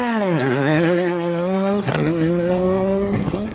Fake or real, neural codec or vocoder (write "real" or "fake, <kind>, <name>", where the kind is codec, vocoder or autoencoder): fake, codec, SNAC